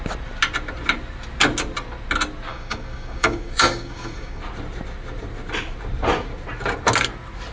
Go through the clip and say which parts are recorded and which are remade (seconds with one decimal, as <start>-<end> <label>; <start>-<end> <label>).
0.0-2.5 recorded; 2.5-4.4 remade; 4.4-7.5 recorded